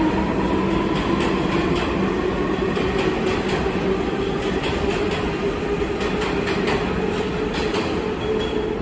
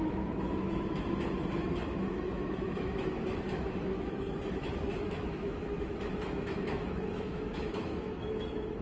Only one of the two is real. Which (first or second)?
first